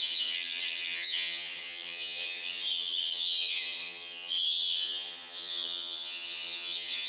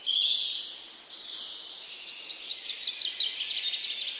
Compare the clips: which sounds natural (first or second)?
second